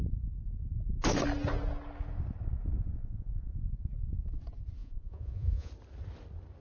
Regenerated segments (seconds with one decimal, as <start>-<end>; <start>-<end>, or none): 3.0-3.5; 4.8-5.7